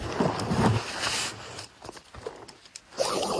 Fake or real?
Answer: real